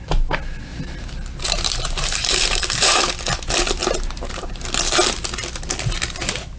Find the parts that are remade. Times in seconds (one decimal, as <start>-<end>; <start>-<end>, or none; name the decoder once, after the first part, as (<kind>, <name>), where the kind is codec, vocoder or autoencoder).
0.7-3.0 (vocoder, BigVGAN v2); 3.8-4.6